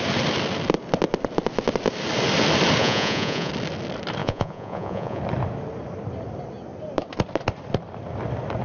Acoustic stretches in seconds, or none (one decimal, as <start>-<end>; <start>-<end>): 0.0-2.8; 3.5-4.2; 5.2-8.6